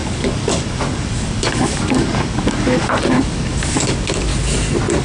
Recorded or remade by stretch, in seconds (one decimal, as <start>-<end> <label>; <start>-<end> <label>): 0.0-4.3 remade; 4.3-5.0 recorded